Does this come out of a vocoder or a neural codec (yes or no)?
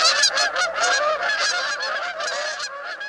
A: no